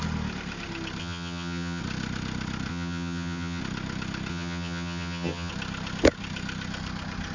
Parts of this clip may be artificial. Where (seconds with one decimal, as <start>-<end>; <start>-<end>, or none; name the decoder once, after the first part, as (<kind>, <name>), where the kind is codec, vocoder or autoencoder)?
1.0-1.8 (vocoder, HiFi-GAN); 2.7-3.6; 4.3-5.5